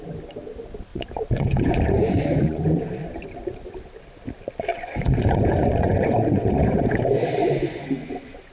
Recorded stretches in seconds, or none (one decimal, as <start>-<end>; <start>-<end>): 0.0-0.9; 2.8-4.7; 7.0-7.4